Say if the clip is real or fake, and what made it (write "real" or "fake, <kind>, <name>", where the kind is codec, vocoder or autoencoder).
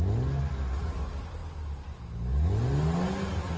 real